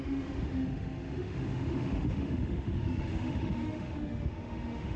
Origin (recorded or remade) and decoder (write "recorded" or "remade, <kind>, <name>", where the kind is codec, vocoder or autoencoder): remade, autoencoder, DAC-VAE